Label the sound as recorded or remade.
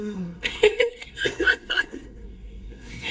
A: remade